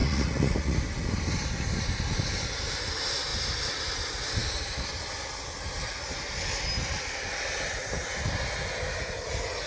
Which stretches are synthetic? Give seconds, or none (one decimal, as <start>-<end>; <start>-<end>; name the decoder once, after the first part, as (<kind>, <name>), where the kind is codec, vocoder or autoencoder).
0.0-0.8 (vocoder, Vocos)